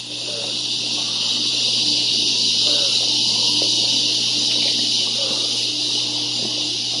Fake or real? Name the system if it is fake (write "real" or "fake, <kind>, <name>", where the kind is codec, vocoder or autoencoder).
real